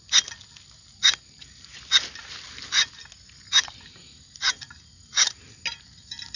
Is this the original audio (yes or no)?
yes